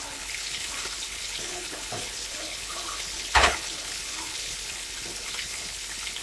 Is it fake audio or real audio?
fake